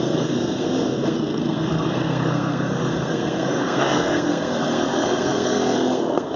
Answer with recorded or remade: remade